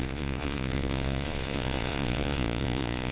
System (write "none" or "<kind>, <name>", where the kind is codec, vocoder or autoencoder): vocoder, Vocos